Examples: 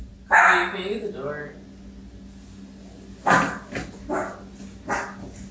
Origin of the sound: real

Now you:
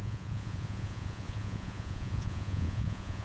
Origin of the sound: fake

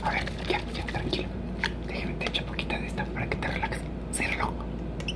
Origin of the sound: real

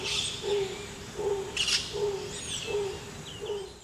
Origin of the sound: real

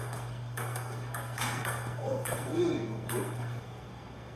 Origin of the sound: fake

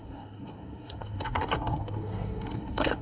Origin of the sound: fake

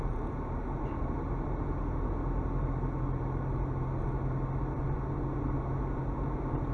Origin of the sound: real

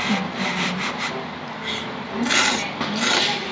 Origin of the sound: real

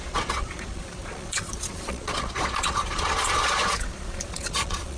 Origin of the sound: fake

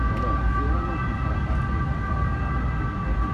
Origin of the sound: real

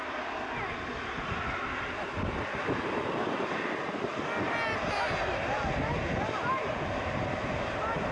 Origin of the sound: real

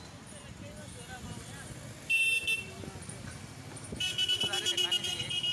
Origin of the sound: real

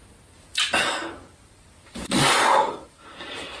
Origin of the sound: real